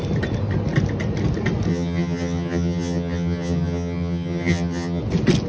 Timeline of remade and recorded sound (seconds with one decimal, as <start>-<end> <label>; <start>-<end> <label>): 0.0-1.7 recorded; 1.7-5.0 remade; 5.0-5.5 recorded